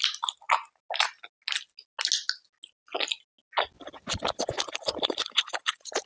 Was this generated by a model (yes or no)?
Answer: no